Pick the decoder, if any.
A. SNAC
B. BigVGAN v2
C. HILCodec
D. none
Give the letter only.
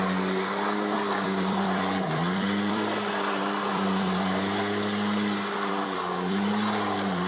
B